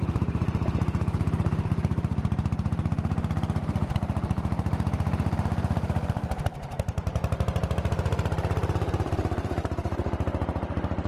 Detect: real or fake fake